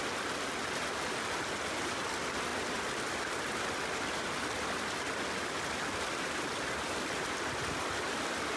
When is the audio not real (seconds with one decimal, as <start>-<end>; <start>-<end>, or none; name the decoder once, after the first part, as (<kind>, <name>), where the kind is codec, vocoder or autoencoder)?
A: none